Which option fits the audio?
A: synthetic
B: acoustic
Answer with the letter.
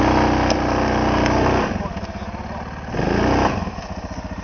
B